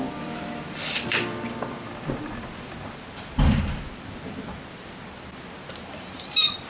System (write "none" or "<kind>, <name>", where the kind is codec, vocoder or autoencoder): none